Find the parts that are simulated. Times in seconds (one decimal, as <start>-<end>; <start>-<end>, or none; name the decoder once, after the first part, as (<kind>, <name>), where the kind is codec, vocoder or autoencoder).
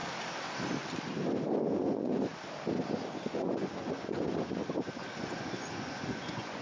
1.7-2.3 (vocoder, Vocos); 3.1-4.6; 5.2-6.6